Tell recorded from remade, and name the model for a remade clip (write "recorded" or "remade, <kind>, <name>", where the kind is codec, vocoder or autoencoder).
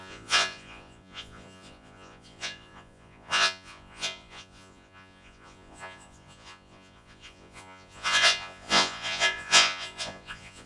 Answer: remade, vocoder, Vocos